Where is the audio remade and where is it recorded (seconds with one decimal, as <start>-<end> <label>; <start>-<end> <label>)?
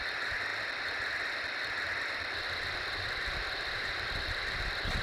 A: 0.0-0.5 remade; 0.5-3.0 recorded; 3.0-5.0 remade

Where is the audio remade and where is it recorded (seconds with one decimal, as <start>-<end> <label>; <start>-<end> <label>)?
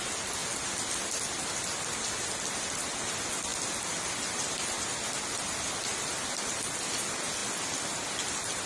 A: 0.0-8.7 recorded